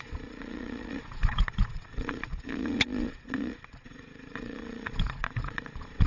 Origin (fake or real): fake